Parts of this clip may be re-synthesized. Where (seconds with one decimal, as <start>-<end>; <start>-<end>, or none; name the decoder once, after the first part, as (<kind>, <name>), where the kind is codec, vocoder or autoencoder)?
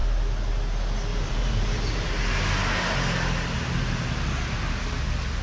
1.1-2.1 (vocoder, BigVGAN v2)